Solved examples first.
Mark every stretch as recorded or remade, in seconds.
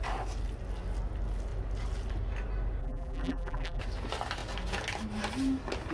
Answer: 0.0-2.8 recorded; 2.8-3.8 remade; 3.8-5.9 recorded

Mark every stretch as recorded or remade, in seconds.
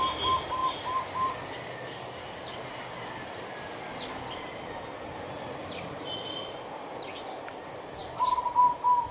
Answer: 0.0-5.6 recorded; 5.6-6.1 remade; 6.1-9.1 recorded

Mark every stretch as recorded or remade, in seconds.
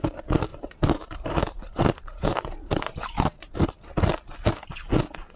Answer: 0.0-0.5 recorded; 0.5-3.5 remade; 3.5-5.4 recorded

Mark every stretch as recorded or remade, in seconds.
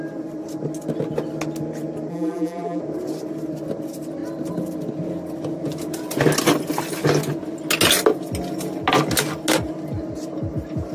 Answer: 0.0-2.1 recorded; 2.1-2.8 remade; 2.8-10.9 recorded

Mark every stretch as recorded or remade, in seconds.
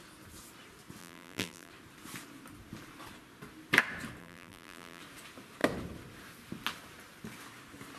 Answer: 0.0-1.0 recorded; 1.0-1.7 remade; 1.7-4.2 recorded; 4.2-5.0 remade; 5.0-8.0 recorded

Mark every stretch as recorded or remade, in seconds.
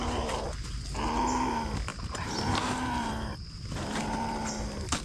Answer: 0.0-1.9 recorded; 1.9-3.1 remade; 3.1-5.0 recorded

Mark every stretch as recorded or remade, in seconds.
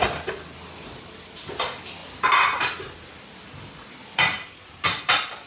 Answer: 0.0-5.5 recorded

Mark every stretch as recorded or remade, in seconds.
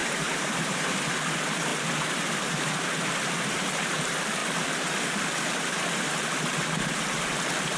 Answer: 0.0-0.9 remade; 0.9-7.8 recorded